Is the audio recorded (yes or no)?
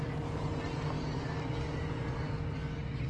yes